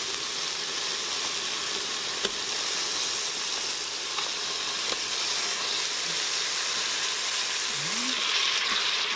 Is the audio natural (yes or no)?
yes